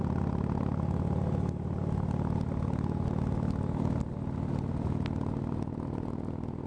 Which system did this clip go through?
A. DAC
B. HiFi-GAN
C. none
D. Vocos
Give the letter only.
C